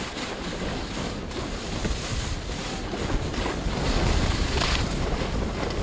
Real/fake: real